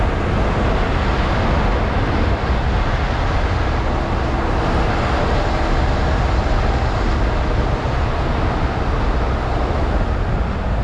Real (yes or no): yes